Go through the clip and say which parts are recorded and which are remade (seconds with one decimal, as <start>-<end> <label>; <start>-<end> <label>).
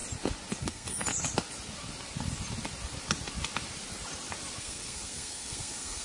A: 0.0-0.6 recorded; 0.6-1.0 remade; 1.0-4.6 recorded; 4.6-6.0 remade